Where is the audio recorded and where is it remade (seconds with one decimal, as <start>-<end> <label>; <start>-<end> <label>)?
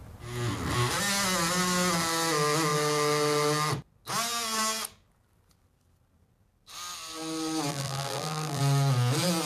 0.0-7.7 recorded; 7.7-8.6 remade; 8.6-9.5 recorded